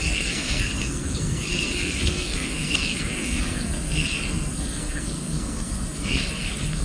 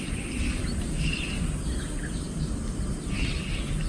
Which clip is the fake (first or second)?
first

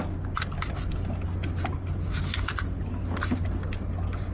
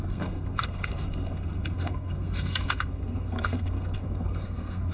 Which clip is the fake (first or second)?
second